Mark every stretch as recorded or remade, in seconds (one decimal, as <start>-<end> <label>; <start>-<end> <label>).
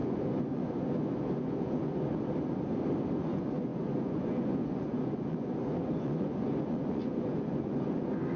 0.0-2.1 remade; 2.1-3.2 recorded; 3.2-8.4 remade